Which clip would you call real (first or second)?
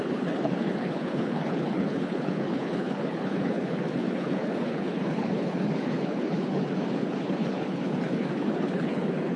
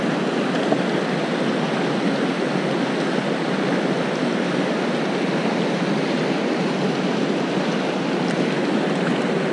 second